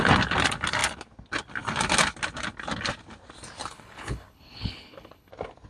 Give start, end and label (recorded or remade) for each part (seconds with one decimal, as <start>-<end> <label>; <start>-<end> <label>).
0.0-3.6 recorded; 3.6-5.3 remade; 5.3-5.7 recorded